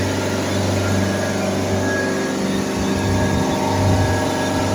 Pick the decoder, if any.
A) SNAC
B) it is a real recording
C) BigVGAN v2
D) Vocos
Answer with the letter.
B